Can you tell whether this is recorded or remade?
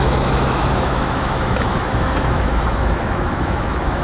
remade